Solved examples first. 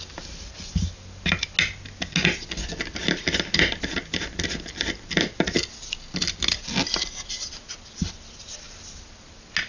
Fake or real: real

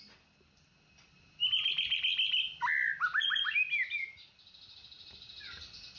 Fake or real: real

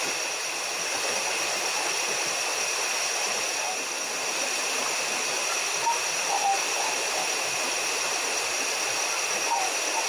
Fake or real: real